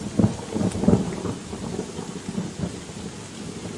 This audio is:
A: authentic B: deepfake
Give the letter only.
A